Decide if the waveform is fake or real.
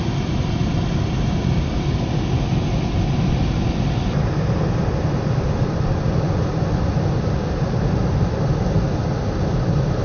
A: real